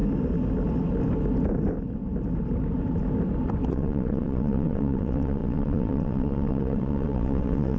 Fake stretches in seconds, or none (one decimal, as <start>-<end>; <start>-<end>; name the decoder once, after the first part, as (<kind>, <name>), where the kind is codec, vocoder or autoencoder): 3.7-7.8 (vocoder, WaveNeXt)

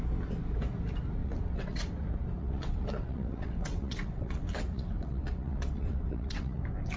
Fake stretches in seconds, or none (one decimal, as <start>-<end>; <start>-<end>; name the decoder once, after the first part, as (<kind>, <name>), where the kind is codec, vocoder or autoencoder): 1.2-1.9 (vocoder, WaveNeXt); 2.4-6.6

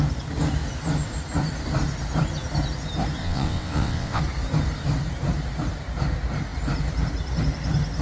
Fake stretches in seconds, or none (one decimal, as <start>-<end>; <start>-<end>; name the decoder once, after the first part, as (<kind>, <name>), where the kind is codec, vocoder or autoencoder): 3.2-4.2 (vocoder, WaveNeXt)